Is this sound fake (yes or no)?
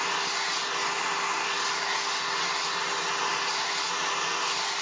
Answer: no